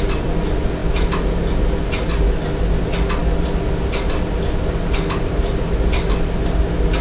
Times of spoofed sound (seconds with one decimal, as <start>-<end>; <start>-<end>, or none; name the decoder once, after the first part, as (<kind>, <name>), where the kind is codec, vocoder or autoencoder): none